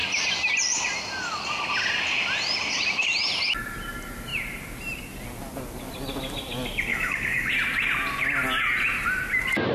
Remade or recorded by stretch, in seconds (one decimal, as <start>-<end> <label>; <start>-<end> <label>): 0.0-6.9 recorded; 6.9-7.5 remade; 7.5-9.7 recorded